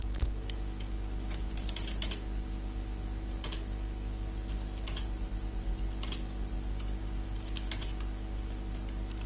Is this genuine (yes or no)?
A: yes